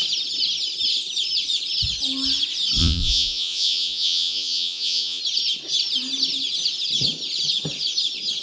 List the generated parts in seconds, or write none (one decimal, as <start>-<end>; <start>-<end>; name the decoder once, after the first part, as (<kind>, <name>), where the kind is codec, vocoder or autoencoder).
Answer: 2.8-5.2 (vocoder, Vocos)